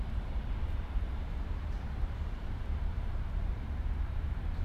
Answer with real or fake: fake